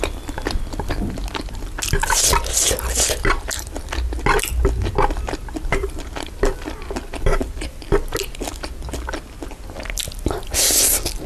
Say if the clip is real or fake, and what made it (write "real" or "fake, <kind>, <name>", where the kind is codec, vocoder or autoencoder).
real